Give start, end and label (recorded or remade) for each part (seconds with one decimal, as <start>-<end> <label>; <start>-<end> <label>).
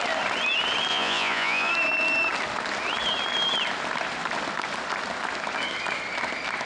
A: 0.0-0.9 recorded; 0.9-1.7 remade; 1.7-6.7 recorded